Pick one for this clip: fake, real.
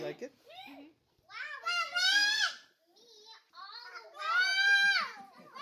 real